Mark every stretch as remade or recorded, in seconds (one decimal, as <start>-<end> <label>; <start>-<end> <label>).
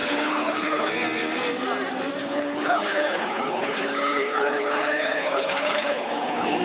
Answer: 0.0-0.9 remade; 0.9-2.2 recorded; 2.2-6.6 remade